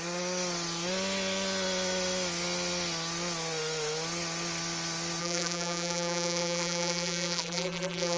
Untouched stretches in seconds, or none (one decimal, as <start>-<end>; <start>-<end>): 0.0-5.2